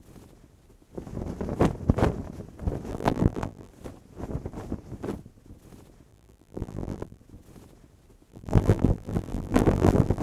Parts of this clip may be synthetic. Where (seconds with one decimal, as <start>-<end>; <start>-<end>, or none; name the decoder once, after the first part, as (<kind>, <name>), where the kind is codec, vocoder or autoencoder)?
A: 2.9-3.7 (vocoder, BigVGAN v2); 6.1-7.2; 8.3-10.2